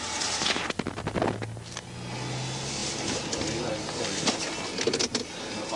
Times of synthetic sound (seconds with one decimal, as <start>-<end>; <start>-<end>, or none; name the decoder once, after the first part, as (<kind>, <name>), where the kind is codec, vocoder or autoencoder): none